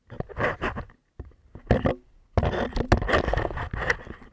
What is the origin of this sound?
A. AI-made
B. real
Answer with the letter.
B